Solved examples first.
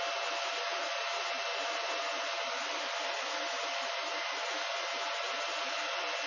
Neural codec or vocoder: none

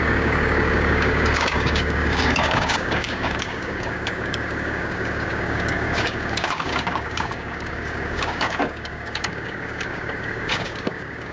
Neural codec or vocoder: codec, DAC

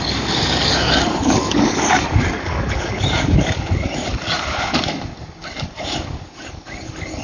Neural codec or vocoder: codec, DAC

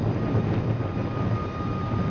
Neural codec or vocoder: none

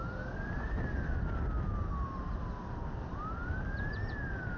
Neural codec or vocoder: none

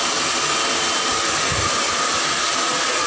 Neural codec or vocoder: none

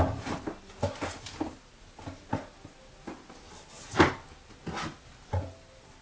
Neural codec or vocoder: none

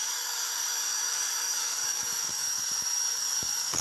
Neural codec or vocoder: codec, DAC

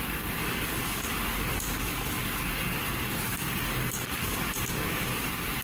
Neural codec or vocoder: codec, DAC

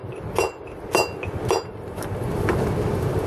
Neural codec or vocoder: none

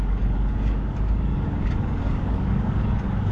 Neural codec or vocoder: codec, DAC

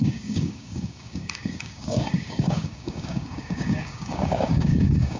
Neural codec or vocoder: codec, DAC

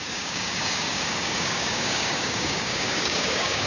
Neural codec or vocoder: codec, DAC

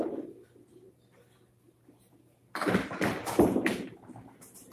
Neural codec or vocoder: none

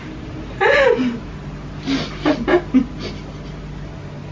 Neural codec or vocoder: none